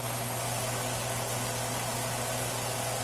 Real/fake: real